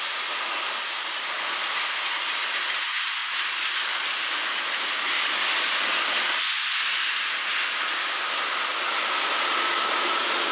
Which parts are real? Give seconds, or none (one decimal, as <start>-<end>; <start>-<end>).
0.0-10.5